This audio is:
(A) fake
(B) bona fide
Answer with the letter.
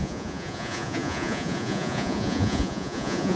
A